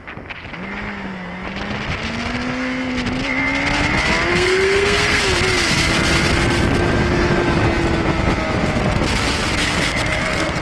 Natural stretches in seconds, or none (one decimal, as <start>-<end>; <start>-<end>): 0.0-4.3; 5.2-9.6